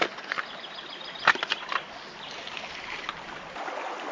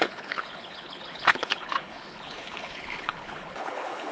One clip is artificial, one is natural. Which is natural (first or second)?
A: first